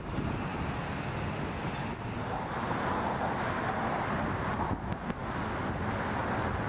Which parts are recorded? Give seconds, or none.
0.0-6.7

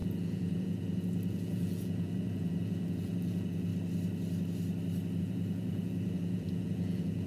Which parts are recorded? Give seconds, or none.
3.7-5.2